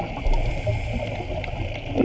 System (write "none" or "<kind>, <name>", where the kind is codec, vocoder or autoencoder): none